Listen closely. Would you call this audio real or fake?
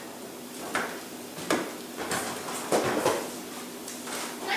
real